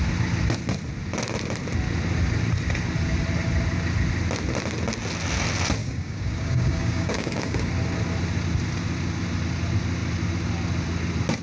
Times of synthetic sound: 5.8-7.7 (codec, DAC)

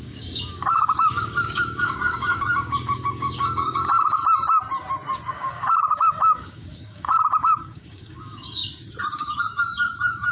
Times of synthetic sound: 0.0-4.2 (codec, DAC); 5.3-8.6; 9.1-10.3

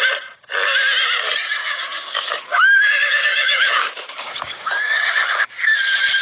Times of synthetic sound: 1.6-5.3 (codec, DAC)

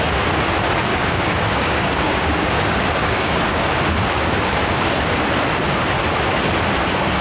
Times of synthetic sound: 0.9-2.6 (codec, DAC); 3.0-3.7

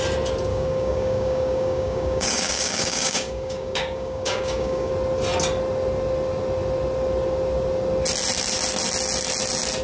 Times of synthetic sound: 0.5-4.9 (codec, DAC)

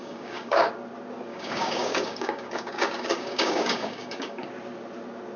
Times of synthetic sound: 0.0-0.7 (codec, DAC); 1.3-4.5